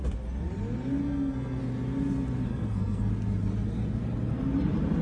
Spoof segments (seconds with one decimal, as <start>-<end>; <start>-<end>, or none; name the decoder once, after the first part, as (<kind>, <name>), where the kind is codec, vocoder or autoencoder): 1.0-1.6 (codec, SNAC); 2.5-3.1

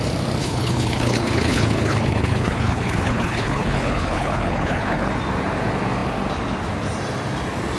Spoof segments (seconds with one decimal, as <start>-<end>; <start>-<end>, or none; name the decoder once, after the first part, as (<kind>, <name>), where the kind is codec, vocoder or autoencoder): 0.4-5.1 (codec, HILCodec)

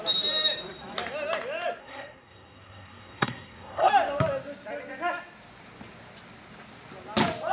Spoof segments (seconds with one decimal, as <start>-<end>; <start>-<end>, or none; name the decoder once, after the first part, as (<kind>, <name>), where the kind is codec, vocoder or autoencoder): 1.8-3.9 (codec, SNAC)

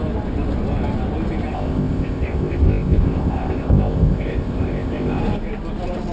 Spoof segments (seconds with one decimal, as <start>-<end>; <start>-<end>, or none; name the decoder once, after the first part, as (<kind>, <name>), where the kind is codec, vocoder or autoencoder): 1.5-5.2 (codec, ZipCodec)